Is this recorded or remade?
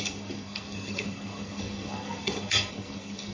remade